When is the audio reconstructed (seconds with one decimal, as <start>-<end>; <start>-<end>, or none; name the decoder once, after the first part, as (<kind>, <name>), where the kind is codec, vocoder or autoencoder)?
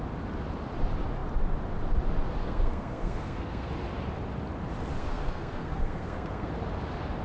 2.4-3.7 (codec, SNAC); 5.0-6.5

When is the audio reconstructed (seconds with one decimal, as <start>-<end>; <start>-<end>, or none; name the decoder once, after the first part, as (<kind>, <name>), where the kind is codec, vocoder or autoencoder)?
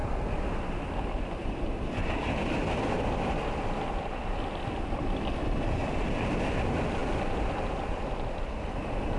none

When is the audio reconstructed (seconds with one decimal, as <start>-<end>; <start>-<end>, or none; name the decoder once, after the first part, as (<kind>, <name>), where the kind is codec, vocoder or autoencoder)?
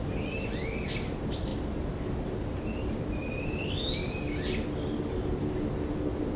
none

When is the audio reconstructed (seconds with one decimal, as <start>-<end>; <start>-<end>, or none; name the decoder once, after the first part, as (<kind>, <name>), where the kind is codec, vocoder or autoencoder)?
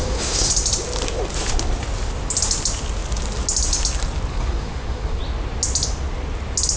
0.0-0.5 (codec, SNAC); 4.3-5.2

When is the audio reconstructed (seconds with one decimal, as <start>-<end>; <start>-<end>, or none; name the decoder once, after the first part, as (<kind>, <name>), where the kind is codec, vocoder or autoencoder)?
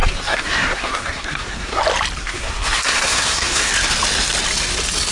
0.0-1.8 (codec, SNAC); 2.2-3.7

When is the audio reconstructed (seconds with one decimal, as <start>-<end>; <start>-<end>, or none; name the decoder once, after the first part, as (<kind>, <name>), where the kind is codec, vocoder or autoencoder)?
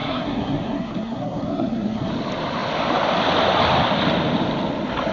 0.0-2.1 (codec, SNAC)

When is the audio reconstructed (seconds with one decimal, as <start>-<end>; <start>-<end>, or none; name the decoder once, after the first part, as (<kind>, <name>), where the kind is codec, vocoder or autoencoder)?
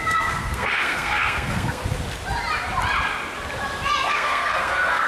0.0-1.8 (codec, SNAC); 4.1-5.1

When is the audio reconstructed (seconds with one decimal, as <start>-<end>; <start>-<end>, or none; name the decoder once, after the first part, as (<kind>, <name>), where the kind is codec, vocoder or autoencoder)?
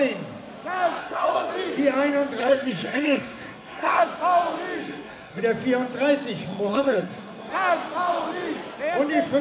1.0-1.5 (codec, SNAC); 2.4-4.0; 4.8-5.4; 6.7-7.5